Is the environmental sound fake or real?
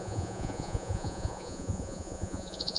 fake